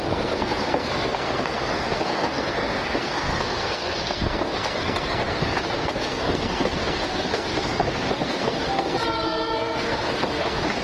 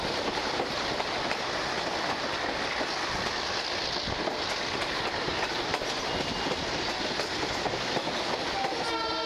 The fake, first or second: first